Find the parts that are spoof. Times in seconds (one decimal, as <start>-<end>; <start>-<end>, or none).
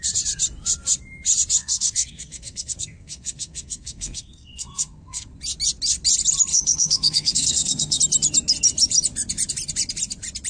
1.6-5.3; 6.5-8.0